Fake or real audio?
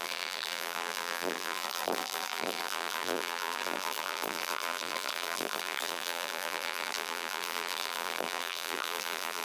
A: fake